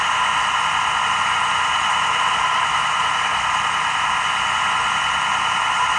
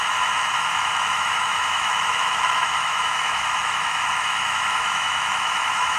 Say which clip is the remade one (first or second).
second